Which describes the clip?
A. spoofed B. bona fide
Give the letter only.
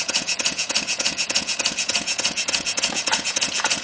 A